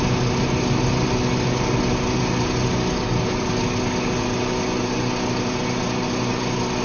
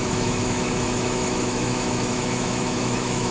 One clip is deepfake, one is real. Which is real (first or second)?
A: first